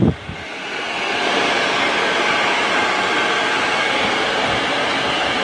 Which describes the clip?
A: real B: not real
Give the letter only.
A